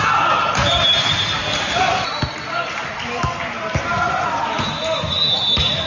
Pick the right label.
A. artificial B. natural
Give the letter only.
B